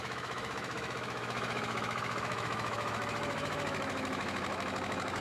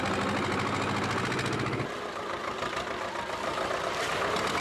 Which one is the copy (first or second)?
first